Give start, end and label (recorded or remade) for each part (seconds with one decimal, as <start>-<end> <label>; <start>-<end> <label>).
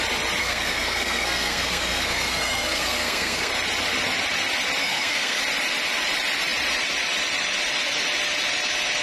0.0-0.4 recorded; 0.4-3.5 remade; 3.5-4.8 recorded; 4.8-5.4 remade; 5.4-9.0 recorded